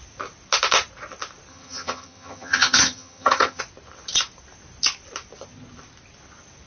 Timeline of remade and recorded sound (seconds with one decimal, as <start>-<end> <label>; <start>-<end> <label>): 0.0-1.5 recorded; 1.5-3.6 remade; 3.6-6.7 recorded